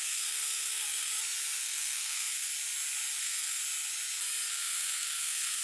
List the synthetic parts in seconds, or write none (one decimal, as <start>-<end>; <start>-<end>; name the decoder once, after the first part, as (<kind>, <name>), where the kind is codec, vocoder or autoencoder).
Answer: 0.0-1.1 (codec, SNAC); 1.6-2.5; 3.2-3.6; 4.5-5.6